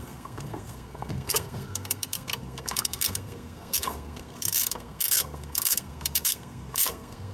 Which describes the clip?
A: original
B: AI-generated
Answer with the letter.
B